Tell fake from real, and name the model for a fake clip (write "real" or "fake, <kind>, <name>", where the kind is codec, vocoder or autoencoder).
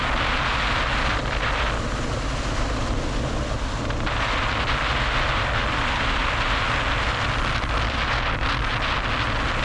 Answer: real